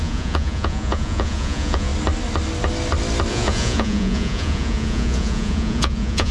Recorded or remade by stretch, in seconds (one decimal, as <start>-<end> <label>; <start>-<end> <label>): 0.0-1.9 remade; 1.9-3.3 recorded; 3.3-6.3 remade